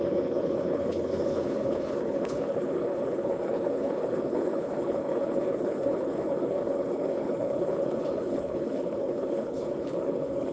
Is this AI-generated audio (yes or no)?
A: yes